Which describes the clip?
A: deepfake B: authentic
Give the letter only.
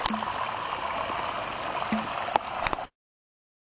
B